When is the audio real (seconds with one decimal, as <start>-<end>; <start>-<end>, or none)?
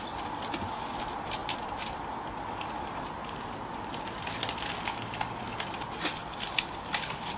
6.2-7.4